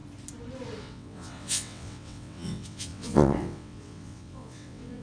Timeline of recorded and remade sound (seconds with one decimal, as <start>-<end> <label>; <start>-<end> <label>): 0.0-0.8 recorded; 0.8-5.0 remade